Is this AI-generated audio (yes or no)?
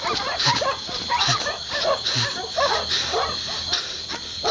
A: no